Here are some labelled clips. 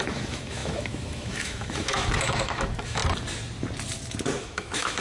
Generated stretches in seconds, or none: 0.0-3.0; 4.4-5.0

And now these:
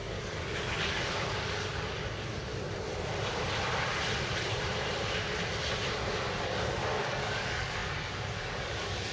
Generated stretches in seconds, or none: 0.0-2.5; 6.4-9.1